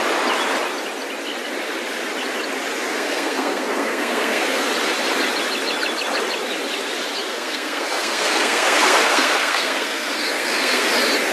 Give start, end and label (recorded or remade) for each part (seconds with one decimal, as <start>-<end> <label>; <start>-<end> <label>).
0.0-2.9 recorded; 2.9-4.7 remade; 4.7-7.3 recorded; 7.3-10.9 remade; 10.9-11.3 recorded